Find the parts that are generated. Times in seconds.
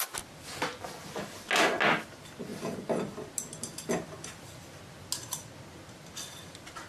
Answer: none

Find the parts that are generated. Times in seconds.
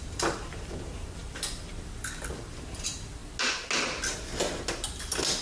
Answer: 0.0-3.2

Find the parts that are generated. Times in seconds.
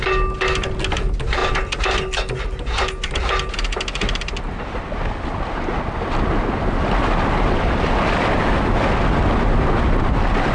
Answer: none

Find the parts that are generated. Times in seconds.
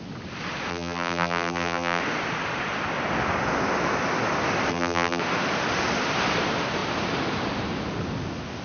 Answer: 0.7-2.0; 4.7-5.2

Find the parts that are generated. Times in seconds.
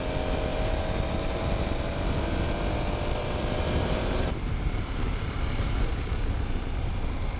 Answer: 0.5-1.5; 3.2-5.1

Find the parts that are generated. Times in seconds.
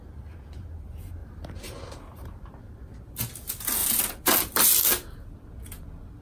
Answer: 1.2-2.4; 3.8-5.3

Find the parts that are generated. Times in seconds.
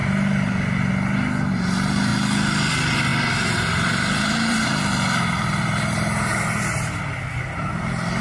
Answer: 3.1-7.0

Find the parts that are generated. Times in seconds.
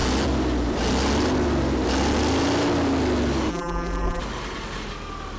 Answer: 3.5-4.2